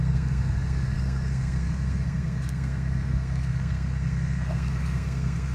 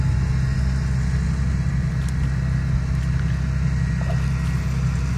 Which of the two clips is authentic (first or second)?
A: second